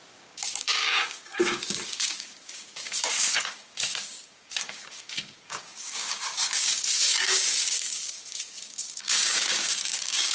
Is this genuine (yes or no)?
no